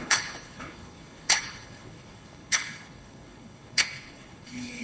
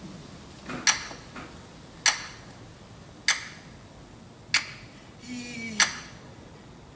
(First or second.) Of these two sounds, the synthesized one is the first